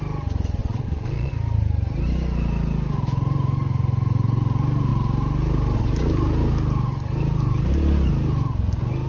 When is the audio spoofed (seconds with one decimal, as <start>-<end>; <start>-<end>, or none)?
0.6-1.3